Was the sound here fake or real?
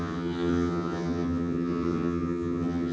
fake